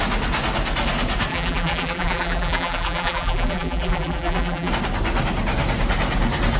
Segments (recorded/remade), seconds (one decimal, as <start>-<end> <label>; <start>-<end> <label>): 0.0-1.3 recorded; 1.3-4.7 remade; 4.7-6.6 recorded